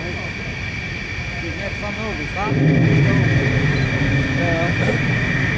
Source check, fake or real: real